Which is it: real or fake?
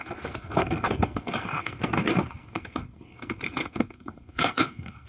fake